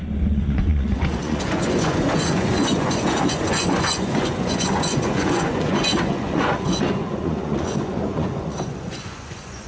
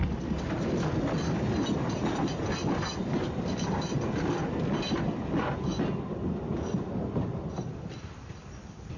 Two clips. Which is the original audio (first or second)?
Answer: second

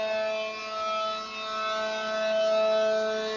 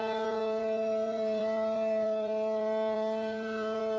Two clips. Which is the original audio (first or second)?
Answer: first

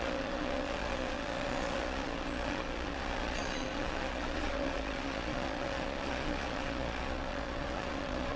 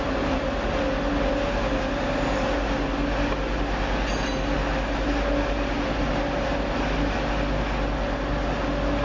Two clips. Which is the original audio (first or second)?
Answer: second